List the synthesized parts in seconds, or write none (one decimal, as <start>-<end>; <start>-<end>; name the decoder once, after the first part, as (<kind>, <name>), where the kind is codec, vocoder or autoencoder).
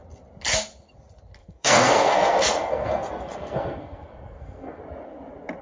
1.4-4.8 (codec, SNAC)